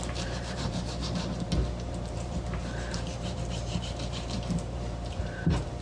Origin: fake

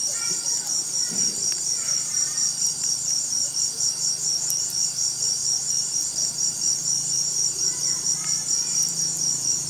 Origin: fake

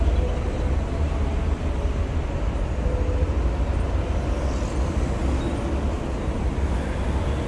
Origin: real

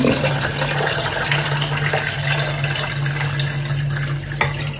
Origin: real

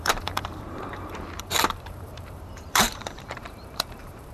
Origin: fake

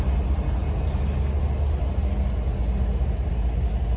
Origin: real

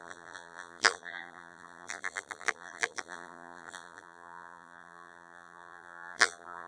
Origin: fake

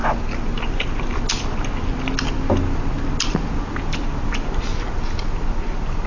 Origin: real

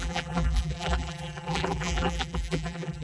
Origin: fake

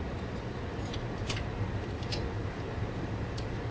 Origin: fake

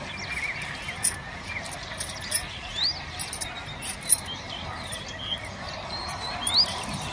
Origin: real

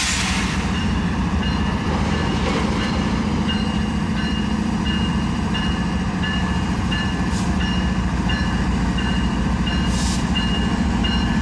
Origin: fake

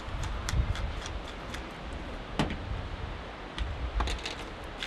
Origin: real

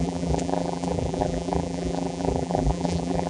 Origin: fake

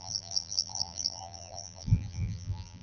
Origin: fake